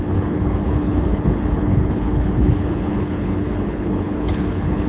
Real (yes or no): no